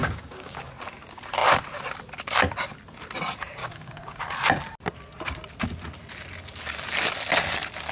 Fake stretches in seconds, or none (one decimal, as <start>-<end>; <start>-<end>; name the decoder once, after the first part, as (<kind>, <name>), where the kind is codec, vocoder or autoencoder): 0.0-0.7 (codec, DAC); 3.6-4.2